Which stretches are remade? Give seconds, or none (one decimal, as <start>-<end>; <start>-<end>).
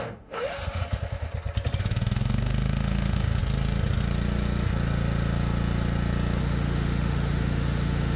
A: 0.0-1.3; 1.8-3.4; 6.4-8.2